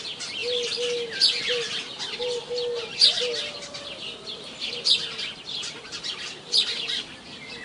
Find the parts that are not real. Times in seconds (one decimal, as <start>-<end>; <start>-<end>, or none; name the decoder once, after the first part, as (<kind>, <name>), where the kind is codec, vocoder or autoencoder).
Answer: none